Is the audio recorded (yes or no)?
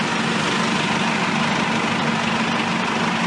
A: yes